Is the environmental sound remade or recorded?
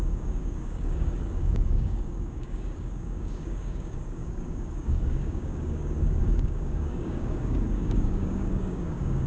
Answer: remade